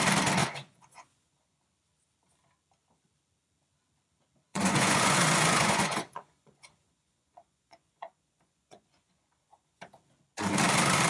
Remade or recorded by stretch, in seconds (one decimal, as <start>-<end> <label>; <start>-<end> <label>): 0.0-0.4 recorded; 0.4-1.6 remade; 1.6-4.5 recorded; 4.5-9.8 remade; 9.8-11.1 recorded